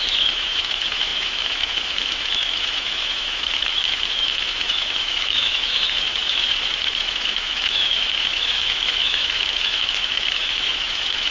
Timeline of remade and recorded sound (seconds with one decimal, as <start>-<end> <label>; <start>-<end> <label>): 0.0-11.3 remade